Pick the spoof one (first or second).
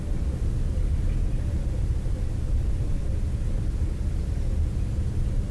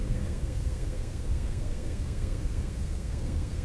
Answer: second